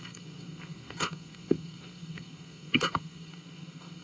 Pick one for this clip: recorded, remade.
remade